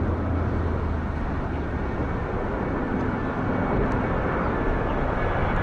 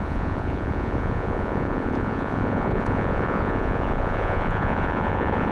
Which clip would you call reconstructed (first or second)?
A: second